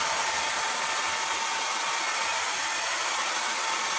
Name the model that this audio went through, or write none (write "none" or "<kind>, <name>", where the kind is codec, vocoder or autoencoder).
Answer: none